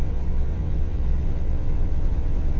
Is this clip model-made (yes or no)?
yes